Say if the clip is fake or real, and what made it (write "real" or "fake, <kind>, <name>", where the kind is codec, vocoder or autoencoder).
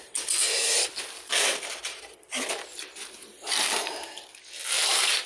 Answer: real